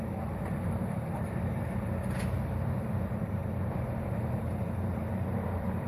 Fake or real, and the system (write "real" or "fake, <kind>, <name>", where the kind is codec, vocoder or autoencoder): fake, vocoder, BigVGAN v2